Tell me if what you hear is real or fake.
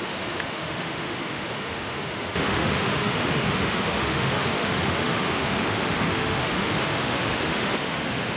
fake